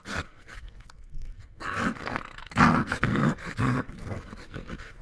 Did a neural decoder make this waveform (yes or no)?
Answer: yes